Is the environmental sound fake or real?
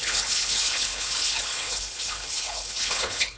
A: fake